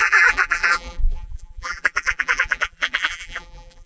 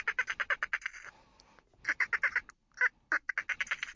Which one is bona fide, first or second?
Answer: second